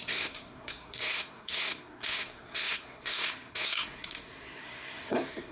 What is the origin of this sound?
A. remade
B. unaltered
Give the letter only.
A